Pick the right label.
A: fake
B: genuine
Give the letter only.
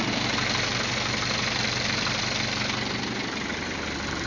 B